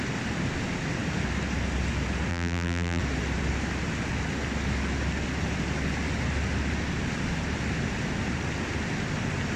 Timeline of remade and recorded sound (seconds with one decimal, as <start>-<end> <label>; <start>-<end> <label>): 0.0-2.3 recorded; 2.3-3.0 remade; 3.0-9.6 recorded